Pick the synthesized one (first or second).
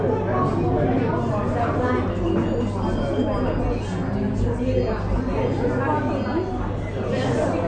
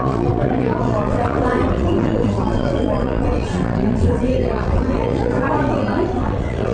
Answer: second